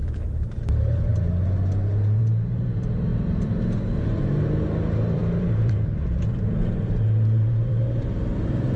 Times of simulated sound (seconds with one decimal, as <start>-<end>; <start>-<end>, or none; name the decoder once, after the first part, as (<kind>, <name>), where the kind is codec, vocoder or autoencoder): 0.0-1.1 (vocoder, BigVGAN v2); 2.2-8.8